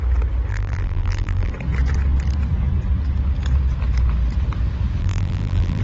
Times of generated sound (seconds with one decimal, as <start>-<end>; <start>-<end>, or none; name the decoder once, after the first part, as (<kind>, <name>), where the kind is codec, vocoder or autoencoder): 0.5-1.5 (vocoder, BigVGAN v2); 5.0-5.8